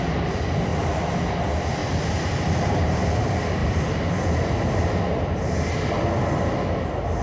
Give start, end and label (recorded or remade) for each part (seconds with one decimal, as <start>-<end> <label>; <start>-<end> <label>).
0.0-1.8 recorded; 1.8-2.9 remade; 2.9-3.6 recorded; 3.6-5.0 remade; 5.0-7.2 recorded